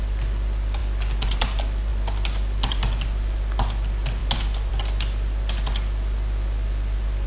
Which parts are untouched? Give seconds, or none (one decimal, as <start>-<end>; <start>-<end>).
0.0-7.3

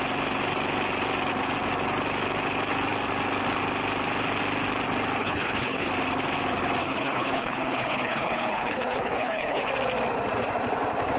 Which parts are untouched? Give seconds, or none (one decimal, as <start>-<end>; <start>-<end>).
0.0-5.2; 5.9-6.8; 9.7-11.2

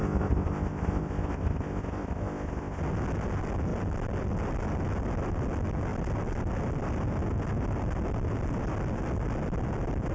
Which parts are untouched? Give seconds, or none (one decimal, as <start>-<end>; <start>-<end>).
2.8-10.1